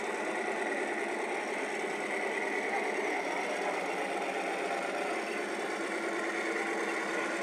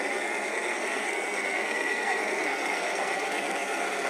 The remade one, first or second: second